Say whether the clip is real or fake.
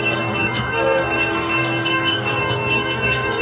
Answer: fake